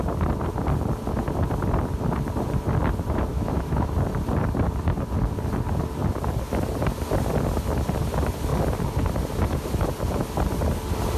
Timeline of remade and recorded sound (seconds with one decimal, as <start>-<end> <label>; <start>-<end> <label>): 0.0-3.3 recorded; 3.3-3.9 remade; 3.9-11.2 recorded